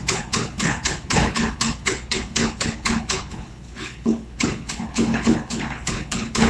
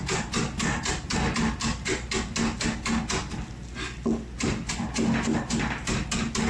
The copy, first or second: first